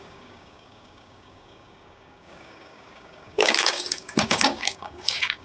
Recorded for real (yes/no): no